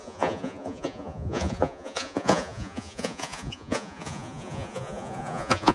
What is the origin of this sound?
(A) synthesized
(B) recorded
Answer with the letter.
A